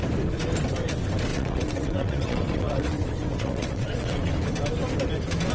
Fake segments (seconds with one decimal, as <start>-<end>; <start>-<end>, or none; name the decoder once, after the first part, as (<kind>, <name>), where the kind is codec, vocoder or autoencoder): 1.3-4.3 (vocoder, WaveNeXt)